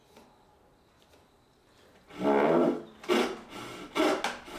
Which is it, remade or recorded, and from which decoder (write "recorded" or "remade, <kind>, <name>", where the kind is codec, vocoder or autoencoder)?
recorded